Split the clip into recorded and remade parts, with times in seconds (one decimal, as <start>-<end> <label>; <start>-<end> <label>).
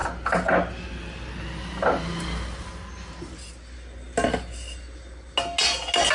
0.0-6.1 recorded